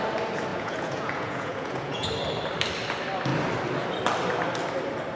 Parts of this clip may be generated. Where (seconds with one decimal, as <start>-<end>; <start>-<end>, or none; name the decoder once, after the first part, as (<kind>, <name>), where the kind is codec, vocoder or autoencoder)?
0.5-2.1 (vocoder, Vocos)